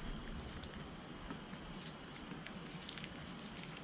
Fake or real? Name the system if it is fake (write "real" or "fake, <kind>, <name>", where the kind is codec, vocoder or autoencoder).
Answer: real